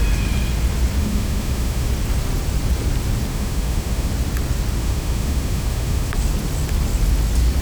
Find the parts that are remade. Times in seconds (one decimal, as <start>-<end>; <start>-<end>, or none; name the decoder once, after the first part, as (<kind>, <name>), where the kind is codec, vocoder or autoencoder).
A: 1.0-1.9 (autoencoder, DAC-VAE); 3.3-4.1; 4.8-6.1